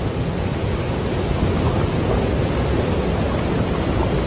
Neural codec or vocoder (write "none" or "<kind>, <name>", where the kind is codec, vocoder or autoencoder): none